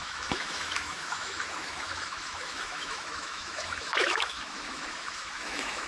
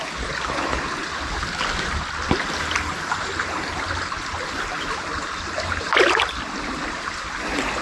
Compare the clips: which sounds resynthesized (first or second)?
first